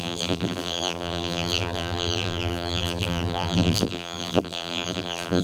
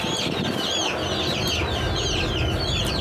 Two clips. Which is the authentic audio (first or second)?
second